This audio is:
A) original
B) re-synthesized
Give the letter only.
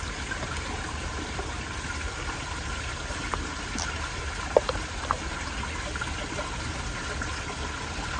A